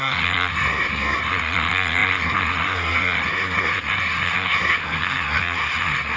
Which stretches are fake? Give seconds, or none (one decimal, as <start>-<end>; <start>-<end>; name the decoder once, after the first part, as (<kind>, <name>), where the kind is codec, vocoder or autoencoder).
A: 0.0-6.2 (codec, SNAC)